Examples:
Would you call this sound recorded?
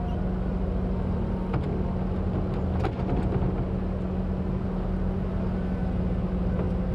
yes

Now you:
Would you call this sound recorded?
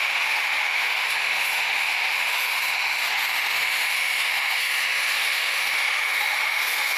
no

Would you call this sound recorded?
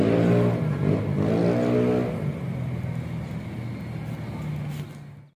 yes